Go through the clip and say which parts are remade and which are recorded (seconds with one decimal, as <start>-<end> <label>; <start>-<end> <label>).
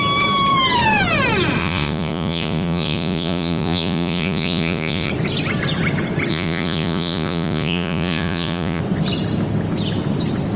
0.0-1.6 recorded; 1.6-5.1 remade; 5.1-6.3 recorded; 6.3-8.8 remade; 8.8-10.6 recorded